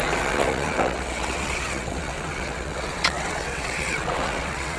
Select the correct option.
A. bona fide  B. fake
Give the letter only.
B